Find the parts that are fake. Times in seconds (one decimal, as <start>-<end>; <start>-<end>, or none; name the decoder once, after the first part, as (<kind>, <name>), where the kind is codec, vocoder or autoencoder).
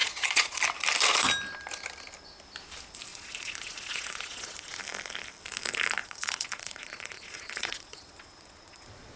0.0-0.6 (vocoder, Vocos); 3.1-4.8; 6.0-9.2